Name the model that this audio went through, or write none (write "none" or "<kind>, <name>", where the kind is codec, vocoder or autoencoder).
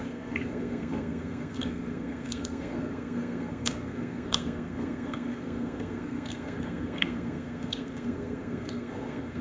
codec, SNAC